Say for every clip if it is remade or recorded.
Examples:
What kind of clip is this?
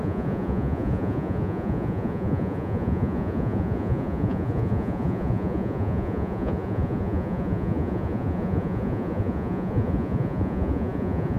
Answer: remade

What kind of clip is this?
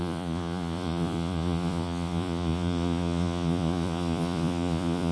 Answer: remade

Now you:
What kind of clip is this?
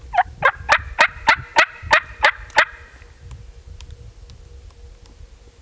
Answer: recorded